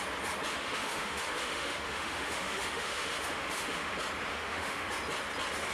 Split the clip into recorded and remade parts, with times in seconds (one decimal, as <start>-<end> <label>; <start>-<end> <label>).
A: 0.0-0.5 recorded; 0.5-3.9 remade; 3.9-4.3 recorded; 4.3-4.9 remade; 4.9-5.7 recorded